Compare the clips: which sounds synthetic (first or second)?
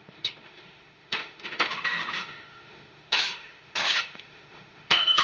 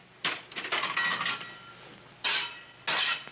first